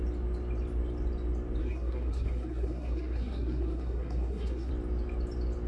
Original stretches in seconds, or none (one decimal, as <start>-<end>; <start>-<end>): 0.0-1.6; 4.7-5.7